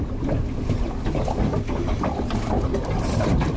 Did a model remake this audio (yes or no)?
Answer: no